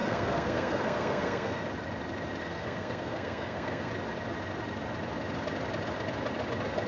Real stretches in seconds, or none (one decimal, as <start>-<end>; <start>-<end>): 1.6-2.4; 3.9-6.9